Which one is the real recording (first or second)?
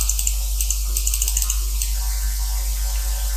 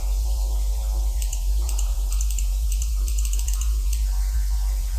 first